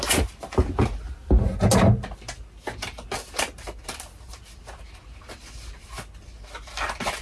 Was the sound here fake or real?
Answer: real